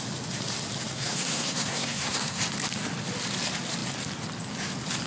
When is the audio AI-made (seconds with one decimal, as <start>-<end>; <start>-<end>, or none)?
0.9-2.4